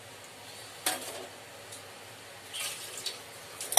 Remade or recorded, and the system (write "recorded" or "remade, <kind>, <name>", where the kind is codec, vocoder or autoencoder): recorded